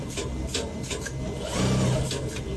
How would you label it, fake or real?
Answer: real